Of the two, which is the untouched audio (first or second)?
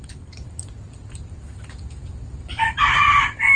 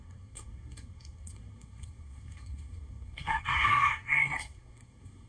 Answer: first